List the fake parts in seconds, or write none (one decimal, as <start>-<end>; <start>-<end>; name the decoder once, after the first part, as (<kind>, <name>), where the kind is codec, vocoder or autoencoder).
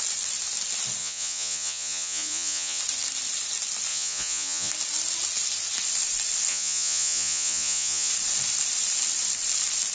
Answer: 1.0-2.8 (vocoder, Vocos); 3.9-4.7; 6.5-8.1